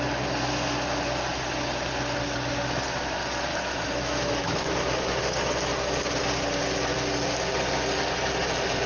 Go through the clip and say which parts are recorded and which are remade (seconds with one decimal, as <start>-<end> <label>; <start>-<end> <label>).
0.0-3.5 recorded; 3.5-5.2 remade; 5.2-8.9 recorded